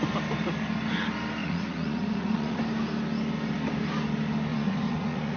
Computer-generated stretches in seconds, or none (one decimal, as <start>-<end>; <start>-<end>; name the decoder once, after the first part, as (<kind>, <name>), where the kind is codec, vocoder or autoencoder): 1.4-2.6 (vocoder, Vocos); 4.5-5.4